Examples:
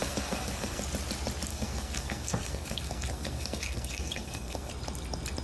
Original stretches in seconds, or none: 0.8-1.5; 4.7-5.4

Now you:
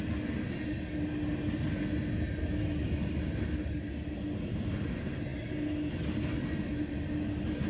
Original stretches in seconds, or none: 0.0-7.7

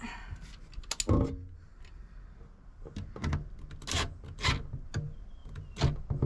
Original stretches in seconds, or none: 0.0-6.3